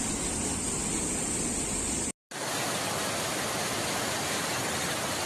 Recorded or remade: recorded